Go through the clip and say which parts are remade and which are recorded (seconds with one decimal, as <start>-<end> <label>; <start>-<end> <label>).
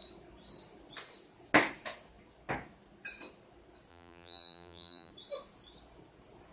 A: 0.0-3.9 recorded; 3.9-5.1 remade; 5.1-6.5 recorded